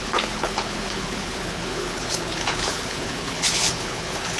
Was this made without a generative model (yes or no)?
no